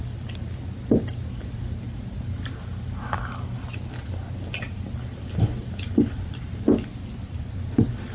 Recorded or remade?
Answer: recorded